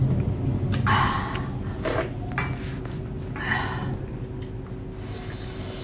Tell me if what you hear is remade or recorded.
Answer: recorded